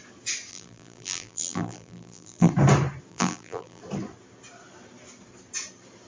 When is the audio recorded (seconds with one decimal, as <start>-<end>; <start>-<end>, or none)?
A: 0.0-0.5; 2.5-3.1; 3.8-6.1